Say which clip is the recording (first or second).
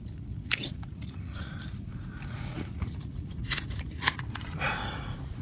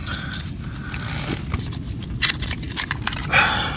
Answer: second